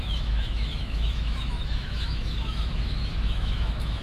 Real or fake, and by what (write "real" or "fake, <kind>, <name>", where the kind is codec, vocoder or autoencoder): fake, autoencoder, DAC-VAE